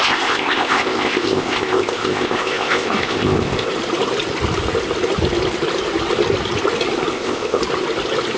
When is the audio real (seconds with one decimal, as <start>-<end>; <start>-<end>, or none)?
3.7-7.1; 7.6-8.4